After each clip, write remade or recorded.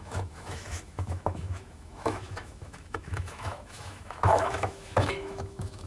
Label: remade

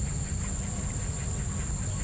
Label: recorded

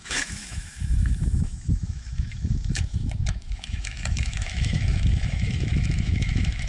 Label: remade